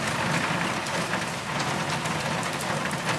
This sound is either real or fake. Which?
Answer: real